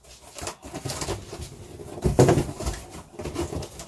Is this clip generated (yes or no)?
no